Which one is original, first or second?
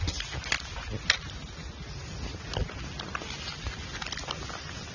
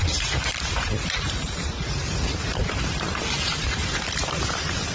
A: first